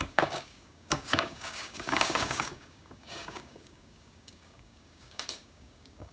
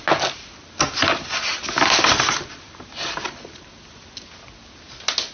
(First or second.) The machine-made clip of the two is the first